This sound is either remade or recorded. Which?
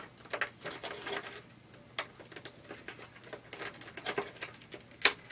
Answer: recorded